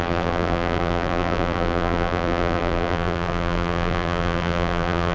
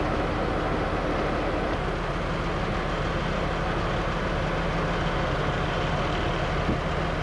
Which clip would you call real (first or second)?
second